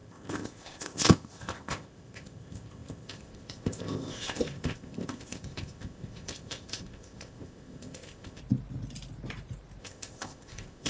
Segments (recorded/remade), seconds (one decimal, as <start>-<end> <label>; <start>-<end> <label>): 0.0-8.4 remade; 8.4-9.8 recorded; 9.8-10.9 remade